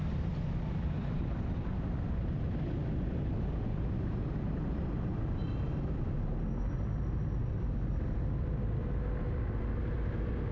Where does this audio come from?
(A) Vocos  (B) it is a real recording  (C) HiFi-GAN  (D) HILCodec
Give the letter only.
B